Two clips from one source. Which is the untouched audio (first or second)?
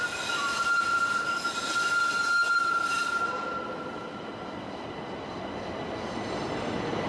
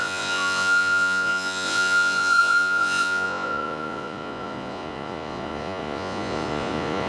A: first